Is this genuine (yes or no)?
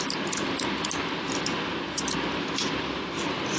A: yes